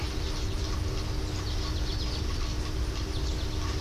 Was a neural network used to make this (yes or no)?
no